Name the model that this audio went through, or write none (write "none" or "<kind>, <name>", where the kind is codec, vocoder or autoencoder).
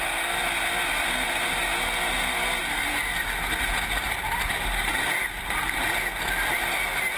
none